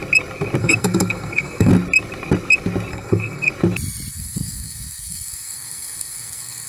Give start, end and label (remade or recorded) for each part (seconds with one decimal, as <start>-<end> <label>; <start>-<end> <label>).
0.0-0.6 recorded; 0.6-1.7 remade; 1.7-2.9 recorded; 2.9-3.5 remade; 3.5-4.1 recorded; 4.1-6.7 remade